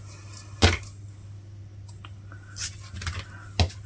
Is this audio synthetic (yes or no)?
no